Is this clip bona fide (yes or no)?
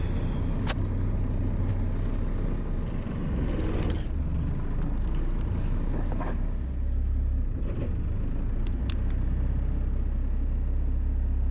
yes